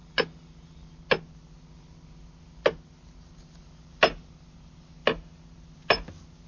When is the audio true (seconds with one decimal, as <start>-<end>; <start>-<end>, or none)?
0.0-6.5